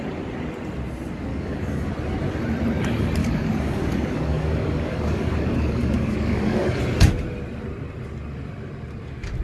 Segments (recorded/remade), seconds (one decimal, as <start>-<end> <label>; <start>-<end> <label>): 0.0-1.3 recorded; 1.3-1.9 remade; 1.9-3.2 recorded; 3.2-6.8 remade; 6.8-9.4 recorded